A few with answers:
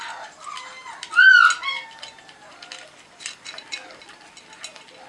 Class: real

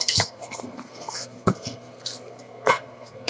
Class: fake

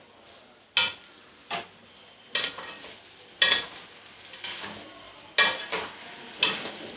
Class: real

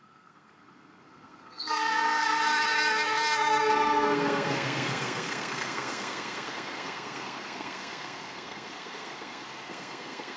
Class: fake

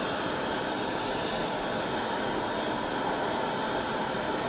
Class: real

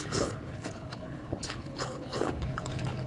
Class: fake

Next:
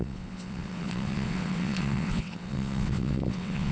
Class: fake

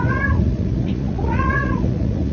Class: fake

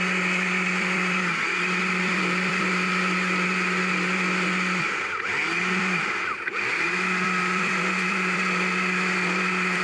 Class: fake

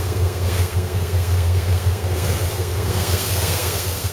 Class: fake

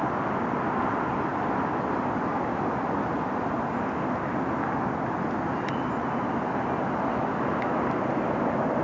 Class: real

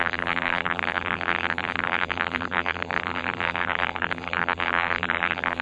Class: fake